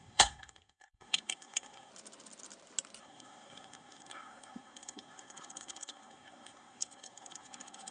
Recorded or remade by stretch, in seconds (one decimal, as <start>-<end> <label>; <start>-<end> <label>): 0.0-1.9 remade; 1.9-3.0 recorded; 3.0-7.9 remade